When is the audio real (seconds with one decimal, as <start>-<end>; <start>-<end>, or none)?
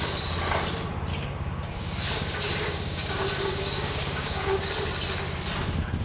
0.0-1.1; 4.7-6.0